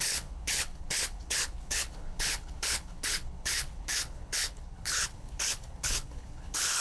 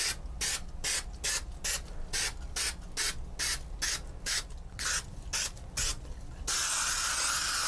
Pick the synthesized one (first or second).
first